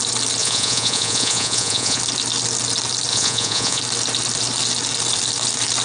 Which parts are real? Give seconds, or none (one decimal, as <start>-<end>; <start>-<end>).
0.0-0.4; 2.0-3.1; 3.8-5.8